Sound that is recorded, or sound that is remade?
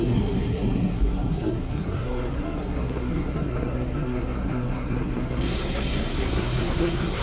remade